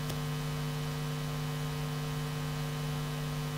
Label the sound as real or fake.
real